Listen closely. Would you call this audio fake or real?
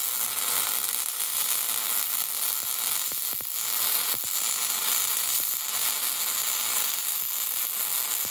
real